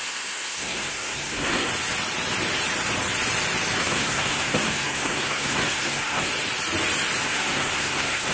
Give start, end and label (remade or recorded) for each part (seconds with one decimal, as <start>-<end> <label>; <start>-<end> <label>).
0.0-1.7 remade; 1.7-3.8 recorded; 3.8-6.3 remade; 6.3-7.2 recorded; 7.2-8.3 remade